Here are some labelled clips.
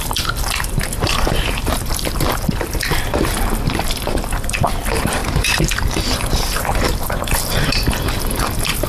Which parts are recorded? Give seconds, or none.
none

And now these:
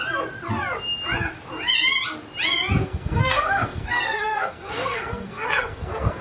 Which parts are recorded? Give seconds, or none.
0.0-2.8

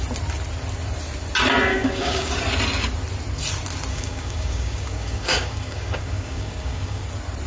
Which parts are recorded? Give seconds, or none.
0.0-1.7; 2.3-3.9; 7.0-7.5

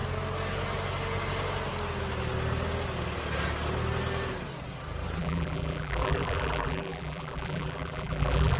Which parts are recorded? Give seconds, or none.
0.0-5.2

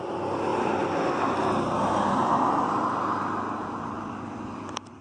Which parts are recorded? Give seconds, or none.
0.0-5.0

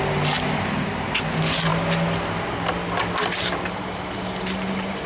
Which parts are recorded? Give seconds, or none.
0.0-5.1

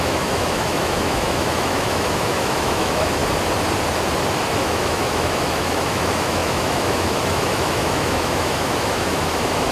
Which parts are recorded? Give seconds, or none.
3.2-4.6

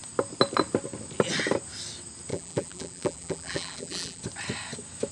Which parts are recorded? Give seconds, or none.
0.0-2.3; 4.2-5.1